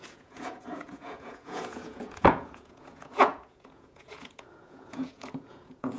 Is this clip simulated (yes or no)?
yes